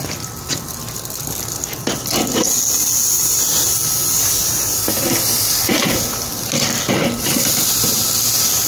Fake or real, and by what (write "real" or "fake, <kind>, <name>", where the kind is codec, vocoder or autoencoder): real